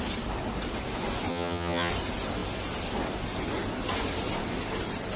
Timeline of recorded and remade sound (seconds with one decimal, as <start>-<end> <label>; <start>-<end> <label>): 0.0-1.3 recorded; 1.3-1.9 remade; 1.9-5.2 recorded